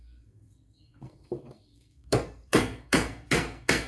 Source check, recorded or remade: remade